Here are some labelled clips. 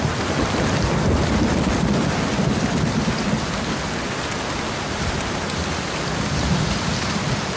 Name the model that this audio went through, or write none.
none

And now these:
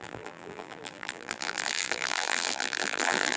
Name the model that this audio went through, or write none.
vocoder, BigVGAN v2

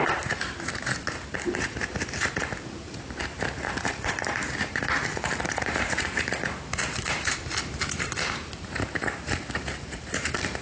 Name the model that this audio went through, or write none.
vocoder, BigVGAN v2